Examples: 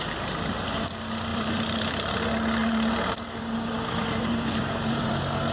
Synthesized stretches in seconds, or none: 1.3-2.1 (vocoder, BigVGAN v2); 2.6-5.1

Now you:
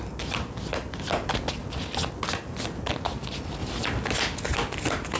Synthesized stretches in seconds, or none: none

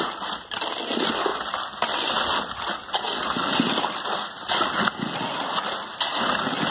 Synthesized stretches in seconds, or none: none

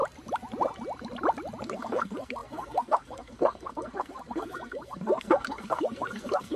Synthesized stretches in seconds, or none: 1.6-6.6 (codec, SNAC)

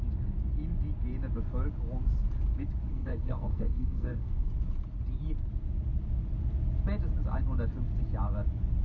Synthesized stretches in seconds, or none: 2.9-4.5 (codec, SNAC)

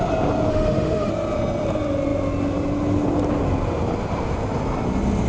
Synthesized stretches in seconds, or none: 0.5-1.1 (autoencoder, DAC-VAE)

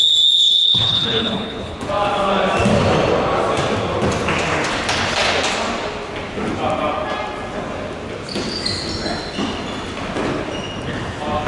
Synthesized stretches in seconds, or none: 0.4-1.9 (codec, HILCodec)